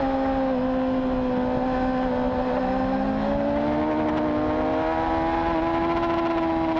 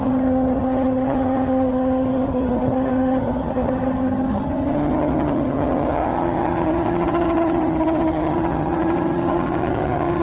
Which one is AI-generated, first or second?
second